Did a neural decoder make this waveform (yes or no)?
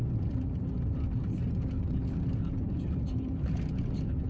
no